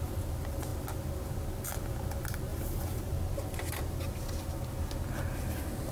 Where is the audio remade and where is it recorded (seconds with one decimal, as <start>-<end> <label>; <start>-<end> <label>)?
0.0-2.5 recorded; 2.5-3.1 remade; 3.1-5.9 recorded